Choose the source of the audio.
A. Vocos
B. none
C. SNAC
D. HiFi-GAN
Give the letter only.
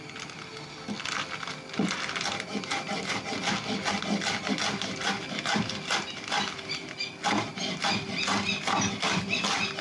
B